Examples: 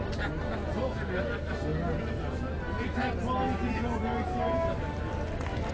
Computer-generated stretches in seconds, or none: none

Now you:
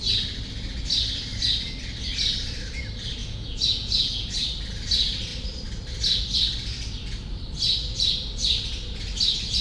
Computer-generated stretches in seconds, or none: 3.2-4.3 (vocoder, Vocos)

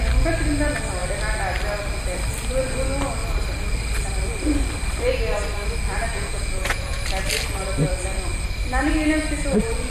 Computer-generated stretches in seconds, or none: 6.1-7.0 (vocoder, Vocos)

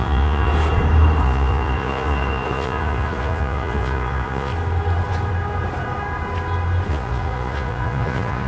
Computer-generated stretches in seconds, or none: 0.0-0.5 (vocoder, Vocos); 1.2-4.5; 6.9-8.5

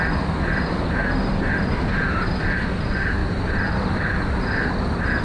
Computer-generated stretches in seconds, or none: none

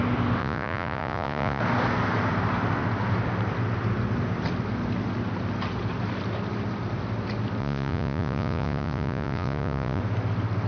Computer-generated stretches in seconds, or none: 0.4-1.6 (vocoder, Vocos); 7.6-10.0

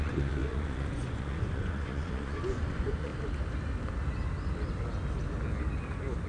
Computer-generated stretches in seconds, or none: 0.0-3.1 (vocoder, Vocos)